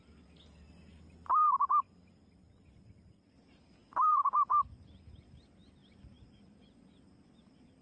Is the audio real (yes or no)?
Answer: yes